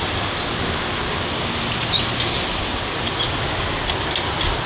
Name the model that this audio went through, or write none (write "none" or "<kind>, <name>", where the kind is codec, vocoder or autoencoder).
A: none